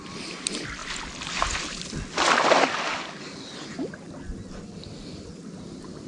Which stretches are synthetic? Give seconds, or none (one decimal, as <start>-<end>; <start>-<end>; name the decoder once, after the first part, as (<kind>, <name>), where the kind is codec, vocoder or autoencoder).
none